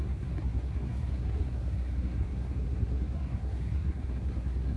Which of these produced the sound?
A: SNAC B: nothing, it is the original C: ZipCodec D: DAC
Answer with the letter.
A